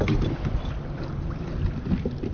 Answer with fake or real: real